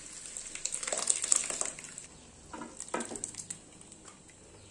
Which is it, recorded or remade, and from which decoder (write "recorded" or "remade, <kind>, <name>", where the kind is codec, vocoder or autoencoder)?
recorded